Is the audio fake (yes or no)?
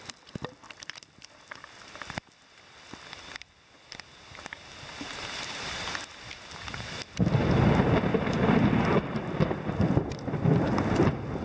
no